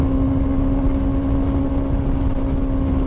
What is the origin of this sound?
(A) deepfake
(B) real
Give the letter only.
B